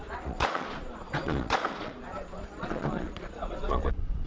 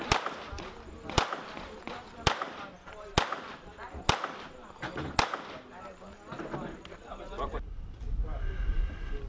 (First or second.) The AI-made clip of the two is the first